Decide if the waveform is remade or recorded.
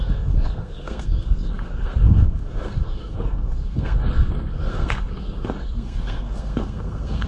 remade